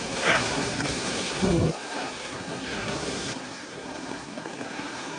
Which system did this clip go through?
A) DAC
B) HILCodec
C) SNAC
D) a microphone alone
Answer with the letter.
C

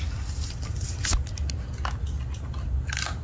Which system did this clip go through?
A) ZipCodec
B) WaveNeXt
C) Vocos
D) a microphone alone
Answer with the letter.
D